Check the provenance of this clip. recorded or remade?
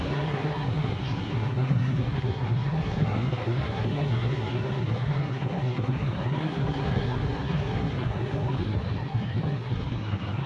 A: remade